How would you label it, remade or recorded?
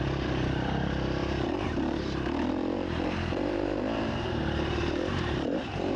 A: remade